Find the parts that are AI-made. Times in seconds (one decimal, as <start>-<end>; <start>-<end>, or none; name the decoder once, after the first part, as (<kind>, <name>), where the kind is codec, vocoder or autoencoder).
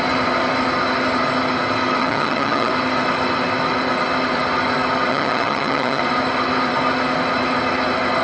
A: 2.0-2.7 (vocoder, HiFi-GAN); 5.1-6.0